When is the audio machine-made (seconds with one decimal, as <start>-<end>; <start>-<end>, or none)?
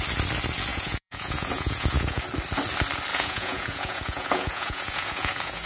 0.7-2.2; 3.1-5.7